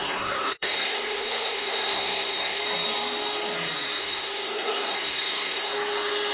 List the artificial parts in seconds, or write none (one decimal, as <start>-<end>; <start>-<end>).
0.0-2.6; 4.0-5.7